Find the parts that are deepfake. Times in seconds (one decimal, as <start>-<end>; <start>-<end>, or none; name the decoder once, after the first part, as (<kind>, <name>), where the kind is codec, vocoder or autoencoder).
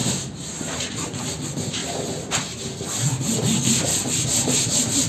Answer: none